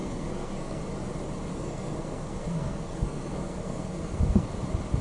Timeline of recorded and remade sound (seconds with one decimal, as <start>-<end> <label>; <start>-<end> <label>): 0.0-0.8 remade; 0.8-1.5 recorded; 1.5-4.5 remade; 4.5-5.0 recorded